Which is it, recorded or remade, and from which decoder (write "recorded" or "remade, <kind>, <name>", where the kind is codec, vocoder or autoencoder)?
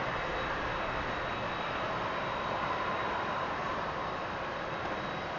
recorded